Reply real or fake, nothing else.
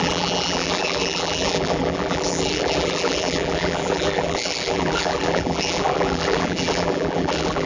fake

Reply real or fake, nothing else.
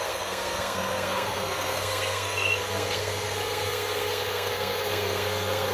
fake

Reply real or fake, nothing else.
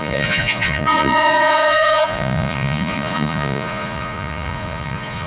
fake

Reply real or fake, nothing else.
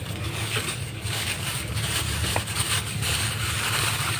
fake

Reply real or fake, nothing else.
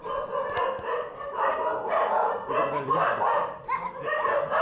real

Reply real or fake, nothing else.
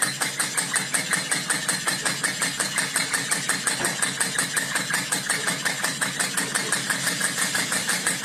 real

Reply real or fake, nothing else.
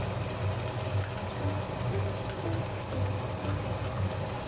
real